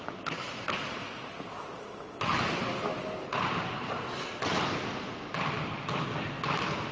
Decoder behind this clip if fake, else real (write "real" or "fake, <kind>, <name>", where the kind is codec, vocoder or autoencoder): real